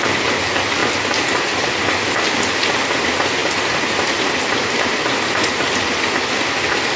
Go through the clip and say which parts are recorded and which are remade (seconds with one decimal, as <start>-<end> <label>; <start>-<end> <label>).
0.0-7.0 recorded